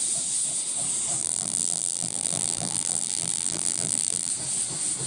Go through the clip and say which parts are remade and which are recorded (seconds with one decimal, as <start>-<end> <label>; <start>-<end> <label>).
0.0-1.2 recorded; 1.2-4.3 remade; 4.3-5.1 recorded